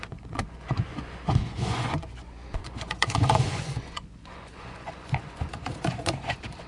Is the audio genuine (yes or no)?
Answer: no